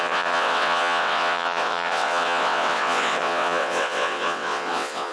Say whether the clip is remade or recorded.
remade